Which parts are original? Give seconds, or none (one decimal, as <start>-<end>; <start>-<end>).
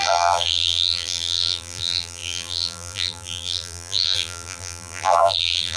none